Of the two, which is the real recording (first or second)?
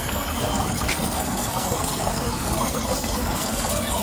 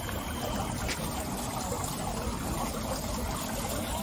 second